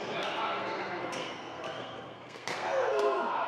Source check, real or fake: fake